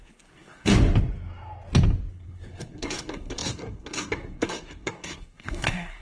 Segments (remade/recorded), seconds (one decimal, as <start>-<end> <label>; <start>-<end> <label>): 0.0-0.7 remade; 0.7-2.1 recorded; 2.1-6.0 remade